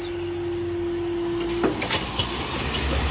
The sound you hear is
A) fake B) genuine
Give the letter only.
B